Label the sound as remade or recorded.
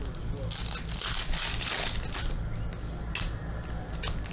recorded